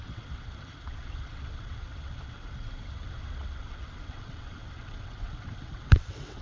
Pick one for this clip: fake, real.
fake